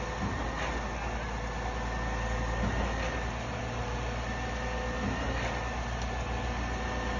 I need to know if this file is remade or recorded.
recorded